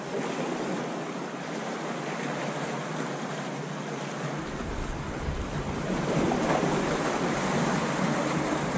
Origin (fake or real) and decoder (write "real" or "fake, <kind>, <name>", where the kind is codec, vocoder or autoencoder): real